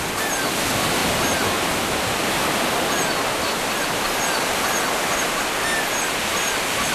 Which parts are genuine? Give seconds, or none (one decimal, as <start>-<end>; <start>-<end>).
0.0-6.9